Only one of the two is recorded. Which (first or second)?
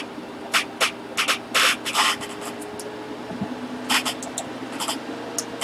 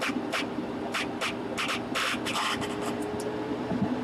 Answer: first